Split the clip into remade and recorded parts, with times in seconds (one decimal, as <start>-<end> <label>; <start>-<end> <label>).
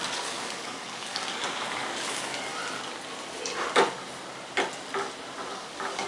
0.0-2.5 remade; 2.5-5.5 recorded; 5.5-6.1 remade